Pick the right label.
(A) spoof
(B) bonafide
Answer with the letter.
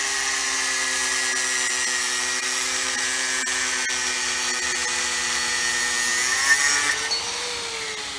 B